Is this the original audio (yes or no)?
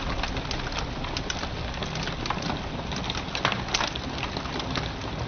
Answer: yes